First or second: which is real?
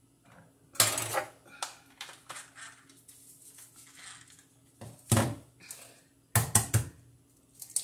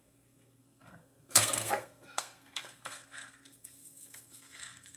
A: first